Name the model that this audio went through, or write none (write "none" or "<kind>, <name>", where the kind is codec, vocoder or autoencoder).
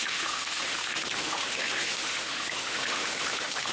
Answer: autoencoder, DAC-VAE